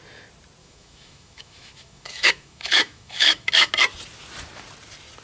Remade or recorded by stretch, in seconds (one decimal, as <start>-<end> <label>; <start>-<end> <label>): 0.0-0.6 recorded; 0.6-3.7 remade; 3.7-5.2 recorded